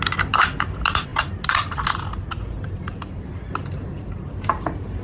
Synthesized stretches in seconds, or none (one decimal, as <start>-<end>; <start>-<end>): none